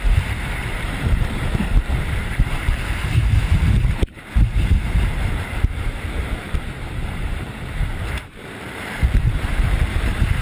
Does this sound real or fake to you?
fake